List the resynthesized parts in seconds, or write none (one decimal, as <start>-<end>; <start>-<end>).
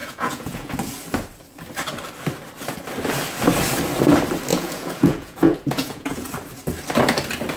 0.0-0.7; 4.5-6.3